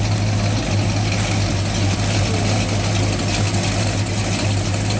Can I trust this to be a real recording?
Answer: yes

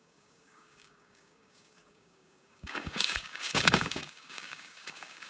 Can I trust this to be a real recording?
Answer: no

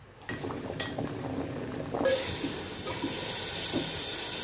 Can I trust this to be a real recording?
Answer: yes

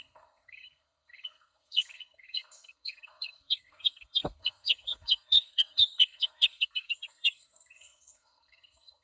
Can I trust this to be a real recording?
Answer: no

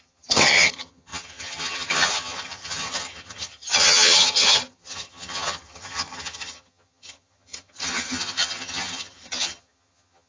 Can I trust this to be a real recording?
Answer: no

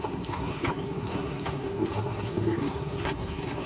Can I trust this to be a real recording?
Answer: no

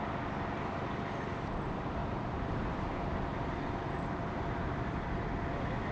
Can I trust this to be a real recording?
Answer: yes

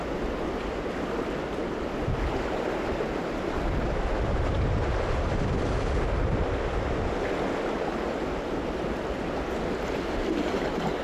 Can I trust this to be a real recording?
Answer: yes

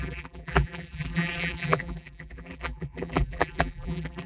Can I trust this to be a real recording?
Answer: no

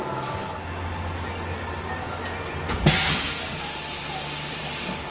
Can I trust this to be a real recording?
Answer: yes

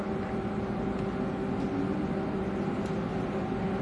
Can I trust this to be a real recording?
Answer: yes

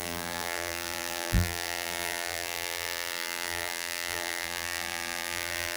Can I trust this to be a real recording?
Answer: no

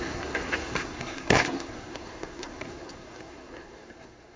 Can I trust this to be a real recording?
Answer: no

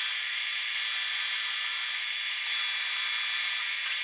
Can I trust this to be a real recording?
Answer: yes